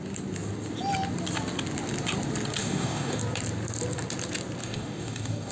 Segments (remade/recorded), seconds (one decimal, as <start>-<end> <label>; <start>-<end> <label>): 0.0-2.6 recorded; 2.6-3.2 remade; 3.2-4.6 recorded; 4.6-5.5 remade